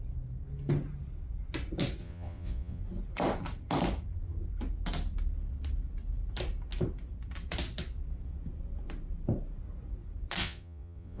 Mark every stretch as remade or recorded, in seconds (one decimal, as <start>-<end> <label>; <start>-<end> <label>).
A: 0.0-2.0 recorded; 2.0-2.8 remade; 2.8-10.4 recorded; 10.4-11.2 remade

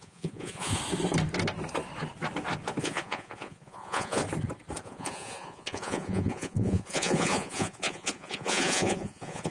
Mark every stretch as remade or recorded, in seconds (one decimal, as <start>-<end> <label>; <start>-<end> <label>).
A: 0.0-0.8 remade; 0.8-2.8 recorded; 2.8-4.2 remade; 4.2-4.8 recorded; 4.8-9.5 remade